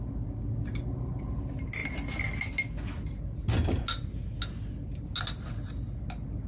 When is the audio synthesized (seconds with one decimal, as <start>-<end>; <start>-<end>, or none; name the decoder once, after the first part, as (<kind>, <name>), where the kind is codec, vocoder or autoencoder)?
none